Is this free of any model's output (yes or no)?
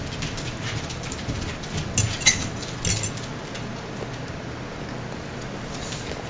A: yes